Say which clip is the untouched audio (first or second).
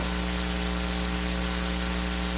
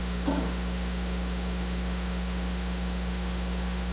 first